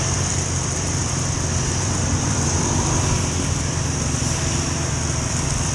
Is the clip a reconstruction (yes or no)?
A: yes